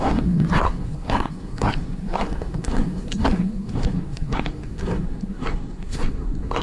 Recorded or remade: remade